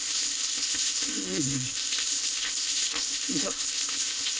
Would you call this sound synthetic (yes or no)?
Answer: yes